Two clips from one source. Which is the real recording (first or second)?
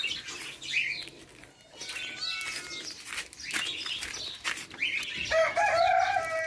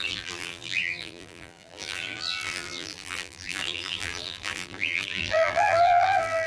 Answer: first